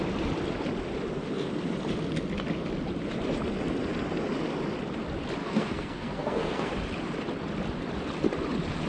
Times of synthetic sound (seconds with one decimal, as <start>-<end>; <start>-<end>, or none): 5.4-6.7